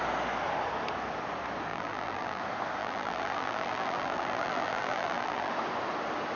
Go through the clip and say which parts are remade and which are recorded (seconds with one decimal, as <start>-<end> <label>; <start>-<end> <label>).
0.0-1.7 recorded; 1.7-2.4 remade; 2.4-2.8 recorded; 2.8-5.5 remade; 5.5-6.3 recorded